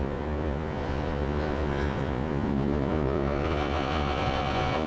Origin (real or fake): fake